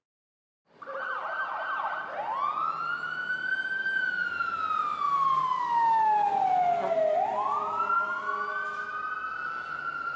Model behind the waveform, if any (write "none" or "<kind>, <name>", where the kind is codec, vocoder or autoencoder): none